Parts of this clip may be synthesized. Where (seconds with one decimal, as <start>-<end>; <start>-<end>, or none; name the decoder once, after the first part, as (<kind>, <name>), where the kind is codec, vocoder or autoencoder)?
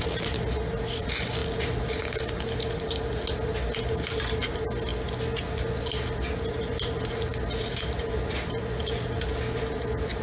none